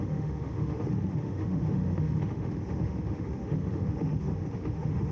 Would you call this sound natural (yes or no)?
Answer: no